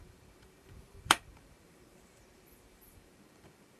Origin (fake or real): fake